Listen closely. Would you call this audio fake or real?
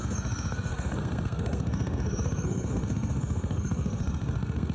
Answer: fake